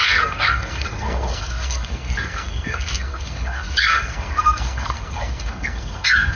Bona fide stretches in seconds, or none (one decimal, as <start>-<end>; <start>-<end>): none